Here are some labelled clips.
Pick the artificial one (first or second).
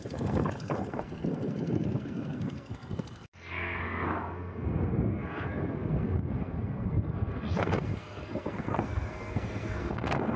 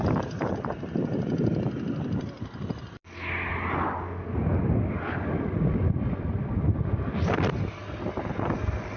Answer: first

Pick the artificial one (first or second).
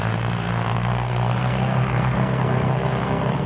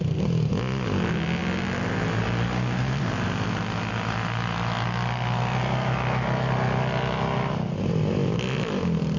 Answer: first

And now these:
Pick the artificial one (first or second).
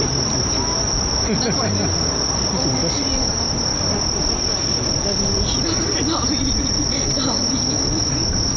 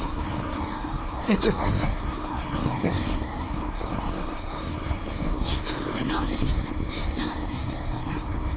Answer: second